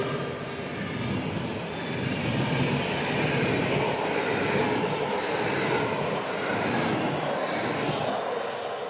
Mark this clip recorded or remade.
recorded